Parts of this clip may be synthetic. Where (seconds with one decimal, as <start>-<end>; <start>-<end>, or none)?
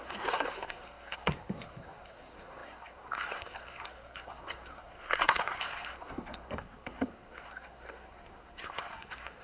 0.0-9.4